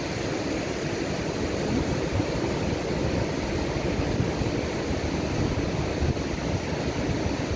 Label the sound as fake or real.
real